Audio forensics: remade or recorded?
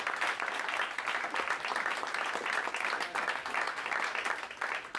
recorded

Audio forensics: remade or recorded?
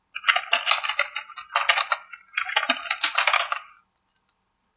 recorded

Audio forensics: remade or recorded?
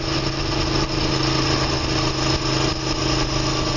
recorded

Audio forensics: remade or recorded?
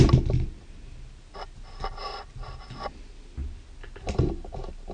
recorded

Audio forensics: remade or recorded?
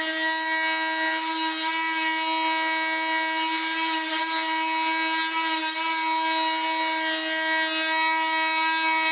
recorded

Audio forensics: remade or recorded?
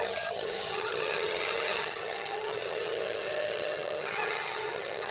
remade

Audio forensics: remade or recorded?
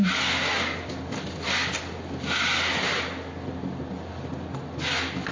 recorded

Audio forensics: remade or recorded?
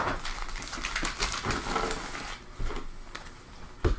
recorded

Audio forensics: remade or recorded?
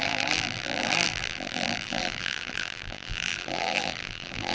remade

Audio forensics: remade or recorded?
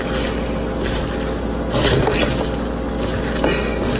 recorded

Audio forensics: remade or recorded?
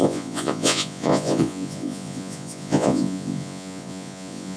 remade